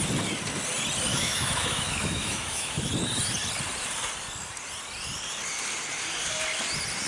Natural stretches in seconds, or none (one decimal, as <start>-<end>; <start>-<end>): 0.0-1.1; 2.9-7.1